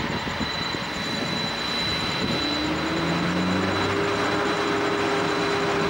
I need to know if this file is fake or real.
real